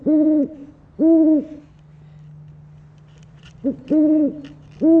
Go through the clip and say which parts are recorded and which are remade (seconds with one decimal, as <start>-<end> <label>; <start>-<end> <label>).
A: 0.0-0.6 remade; 0.6-3.2 recorded; 3.2-4.3 remade; 4.3-5.0 recorded

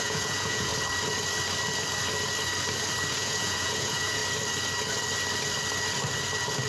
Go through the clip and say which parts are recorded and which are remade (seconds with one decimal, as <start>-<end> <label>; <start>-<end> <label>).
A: 0.0-0.7 remade; 0.7-3.1 recorded; 3.1-4.2 remade; 4.2-6.7 recorded

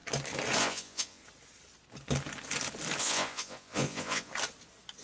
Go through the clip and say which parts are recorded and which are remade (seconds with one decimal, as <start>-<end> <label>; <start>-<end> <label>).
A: 0.0-0.6 recorded; 0.6-1.2 remade; 1.2-3.0 recorded; 3.0-4.3 remade; 4.3-5.0 recorded